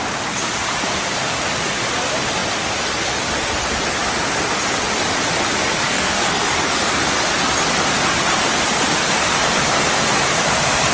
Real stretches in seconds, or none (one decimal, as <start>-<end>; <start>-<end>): 0.0-5.6; 6.9-10.9